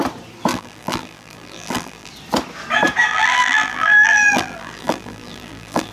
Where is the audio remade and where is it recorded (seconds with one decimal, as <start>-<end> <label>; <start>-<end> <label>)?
0.0-0.5 recorded; 0.5-2.1 remade; 2.1-3.1 recorded; 3.1-5.9 remade